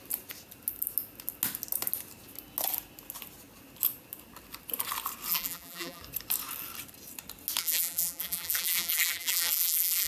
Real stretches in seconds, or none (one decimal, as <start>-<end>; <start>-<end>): 0.0-5.3; 6.0-7.6